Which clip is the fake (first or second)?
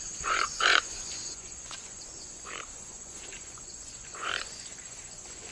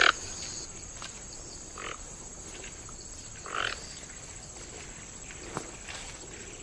first